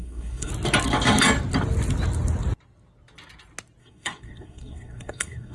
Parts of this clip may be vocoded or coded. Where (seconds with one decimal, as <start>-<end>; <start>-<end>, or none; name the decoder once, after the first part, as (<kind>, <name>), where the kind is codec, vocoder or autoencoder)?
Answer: 0.0-0.5 (codec, SNAC); 3.8-5.5